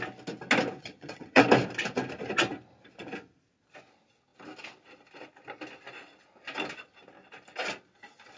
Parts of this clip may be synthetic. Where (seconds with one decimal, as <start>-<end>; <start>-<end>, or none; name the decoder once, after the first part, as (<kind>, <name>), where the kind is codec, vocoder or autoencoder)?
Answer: 0.8-1.4 (vocoder, HiFi-GAN)